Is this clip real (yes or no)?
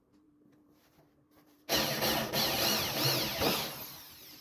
no